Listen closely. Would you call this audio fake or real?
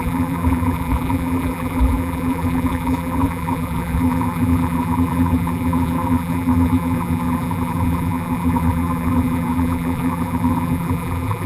fake